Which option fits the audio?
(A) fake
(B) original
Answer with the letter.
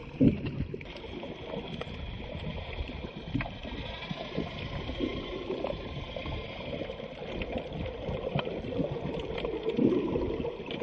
B